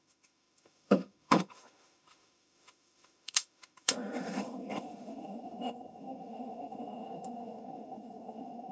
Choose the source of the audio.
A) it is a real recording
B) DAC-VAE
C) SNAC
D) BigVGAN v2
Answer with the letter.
B